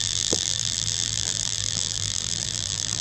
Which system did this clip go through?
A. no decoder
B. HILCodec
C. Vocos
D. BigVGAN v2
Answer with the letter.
D